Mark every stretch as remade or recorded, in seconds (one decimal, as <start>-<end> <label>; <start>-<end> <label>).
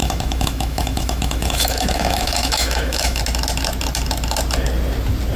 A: 0.0-3.2 remade; 3.2-5.4 recorded